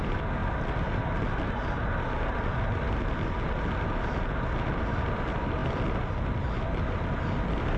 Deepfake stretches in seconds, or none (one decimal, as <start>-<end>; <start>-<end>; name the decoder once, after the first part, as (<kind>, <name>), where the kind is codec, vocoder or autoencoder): none